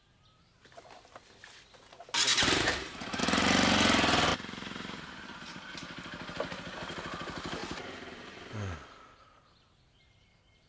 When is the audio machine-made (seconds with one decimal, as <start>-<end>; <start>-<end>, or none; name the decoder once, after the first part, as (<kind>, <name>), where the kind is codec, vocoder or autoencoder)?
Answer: 2.3-3.2 (vocoder, BigVGAN v2); 4.3-5.7; 7.6-8.2